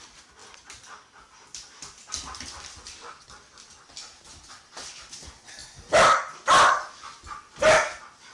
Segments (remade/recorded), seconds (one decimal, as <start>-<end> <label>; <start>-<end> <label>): 0.0-8.3 recorded

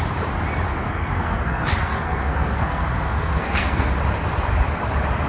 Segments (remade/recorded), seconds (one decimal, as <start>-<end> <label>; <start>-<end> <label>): 0.0-0.7 recorded; 0.7-3.9 remade; 3.9-5.3 recorded

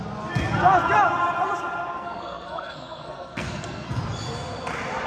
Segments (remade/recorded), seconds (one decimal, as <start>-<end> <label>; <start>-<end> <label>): 0.0-1.9 recorded; 1.9-4.0 remade; 4.0-5.1 recorded

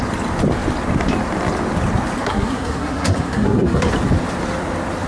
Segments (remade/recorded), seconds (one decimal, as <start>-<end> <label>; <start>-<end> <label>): 0.0-2.2 recorded; 2.2-3.9 remade; 3.9-5.1 recorded

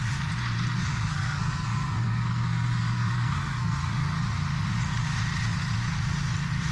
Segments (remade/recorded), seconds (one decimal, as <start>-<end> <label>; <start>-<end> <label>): 0.0-0.8 recorded; 0.8-4.2 remade; 4.2-6.7 recorded

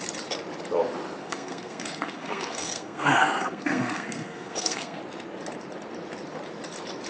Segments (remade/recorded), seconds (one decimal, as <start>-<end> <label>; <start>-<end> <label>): 0.0-1.2 recorded; 1.2-5.0 remade; 5.0-7.1 recorded

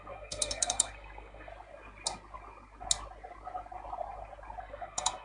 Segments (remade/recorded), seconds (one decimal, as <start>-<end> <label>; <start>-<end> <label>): 0.0-1.5 remade; 1.5-4.6 recorded; 4.6-5.2 remade